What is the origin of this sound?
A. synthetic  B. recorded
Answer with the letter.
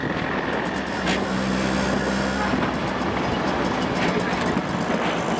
B